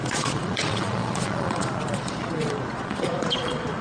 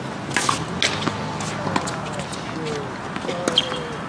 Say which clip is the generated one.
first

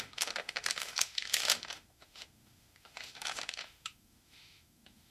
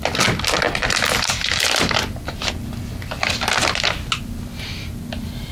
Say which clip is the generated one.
first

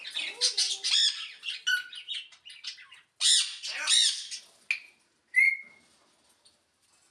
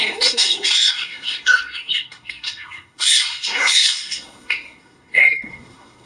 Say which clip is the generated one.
second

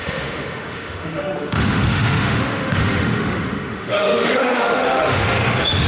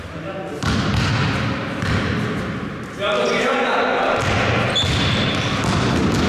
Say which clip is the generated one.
first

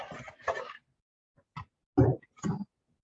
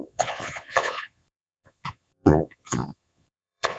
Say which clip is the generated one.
second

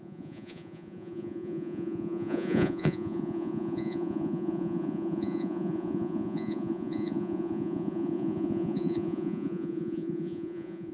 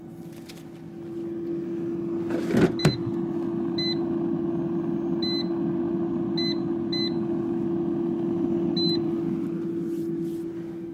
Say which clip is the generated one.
first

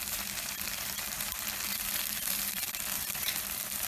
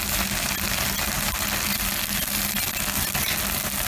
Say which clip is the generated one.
first